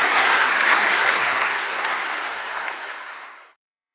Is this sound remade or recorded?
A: remade